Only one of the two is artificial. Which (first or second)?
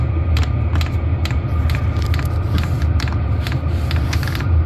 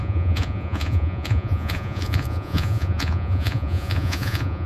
second